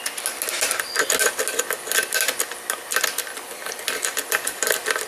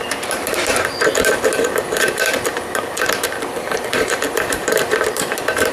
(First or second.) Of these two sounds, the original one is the first